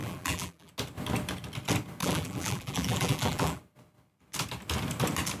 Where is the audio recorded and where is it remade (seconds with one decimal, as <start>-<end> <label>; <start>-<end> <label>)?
0.0-0.7 remade; 0.7-2.0 recorded; 2.0-3.6 remade; 3.6-5.4 recorded